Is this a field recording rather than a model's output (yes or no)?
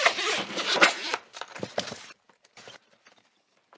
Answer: no